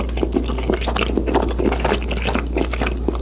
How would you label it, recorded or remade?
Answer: recorded